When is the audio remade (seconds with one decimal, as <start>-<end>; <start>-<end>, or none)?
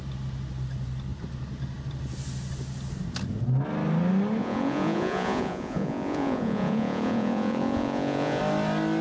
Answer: 4.4-8.4